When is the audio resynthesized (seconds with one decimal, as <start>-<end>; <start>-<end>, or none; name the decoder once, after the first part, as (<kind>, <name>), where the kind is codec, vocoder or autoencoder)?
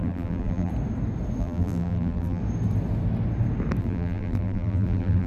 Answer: 0.0-0.7 (vocoder, BigVGAN v2); 1.4-2.4; 3.8-5.3